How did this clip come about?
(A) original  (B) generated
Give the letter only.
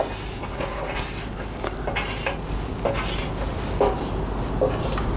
A